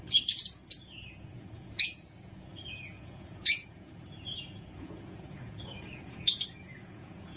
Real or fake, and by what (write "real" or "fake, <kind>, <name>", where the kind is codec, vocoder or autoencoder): fake, vocoder, Vocos